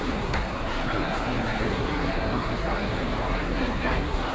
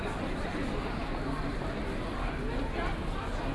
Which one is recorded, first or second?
second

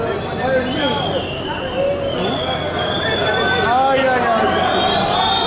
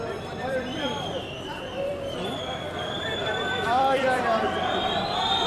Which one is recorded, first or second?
first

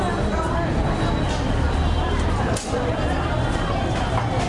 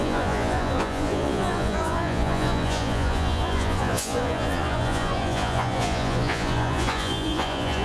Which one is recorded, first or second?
first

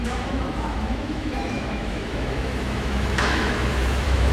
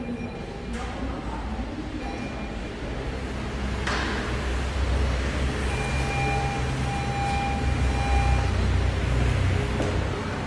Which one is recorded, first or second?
second